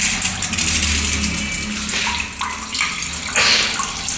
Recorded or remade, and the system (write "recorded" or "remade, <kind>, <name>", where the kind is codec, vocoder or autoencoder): recorded